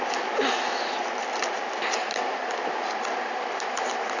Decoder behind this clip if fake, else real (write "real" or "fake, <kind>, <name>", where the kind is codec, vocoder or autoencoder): real